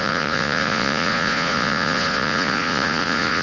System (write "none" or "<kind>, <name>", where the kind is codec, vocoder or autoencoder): vocoder, Vocos